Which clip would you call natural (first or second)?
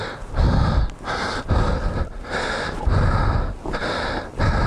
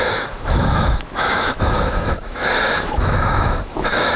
first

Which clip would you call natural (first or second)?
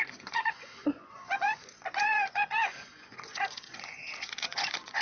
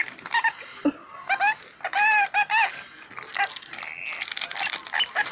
second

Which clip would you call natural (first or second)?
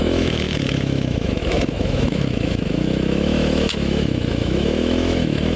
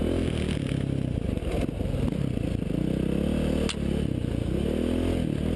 second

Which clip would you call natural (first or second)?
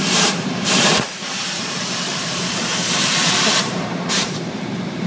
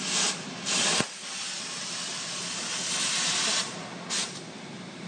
second